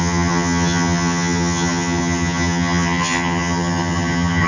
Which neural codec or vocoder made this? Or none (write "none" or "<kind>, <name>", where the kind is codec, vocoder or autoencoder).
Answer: vocoder, HiFi-GAN